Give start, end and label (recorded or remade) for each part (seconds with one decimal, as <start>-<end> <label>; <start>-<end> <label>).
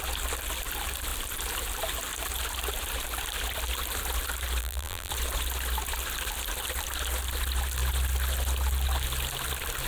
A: 0.0-4.6 recorded; 4.6-5.1 remade; 5.1-9.9 recorded